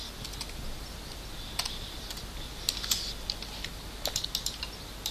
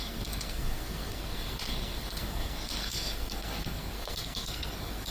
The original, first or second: first